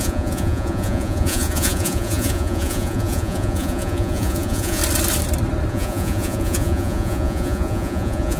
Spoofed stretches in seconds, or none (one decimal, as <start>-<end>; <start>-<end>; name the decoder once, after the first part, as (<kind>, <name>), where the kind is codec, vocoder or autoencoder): 0.0-4.8 (vocoder, Vocos); 5.7-8.4